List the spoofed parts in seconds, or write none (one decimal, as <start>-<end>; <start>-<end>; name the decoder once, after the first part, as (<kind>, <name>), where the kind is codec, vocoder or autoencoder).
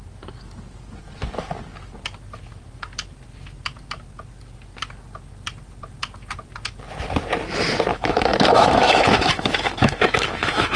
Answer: 7.9-10.8 (autoencoder, DAC-VAE)